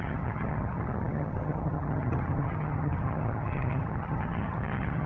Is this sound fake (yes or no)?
yes